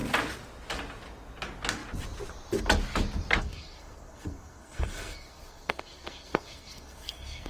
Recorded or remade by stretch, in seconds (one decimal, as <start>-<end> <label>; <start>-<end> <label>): 0.0-3.4 recorded; 3.4-7.5 remade